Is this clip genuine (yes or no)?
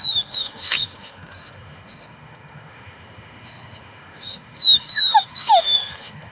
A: no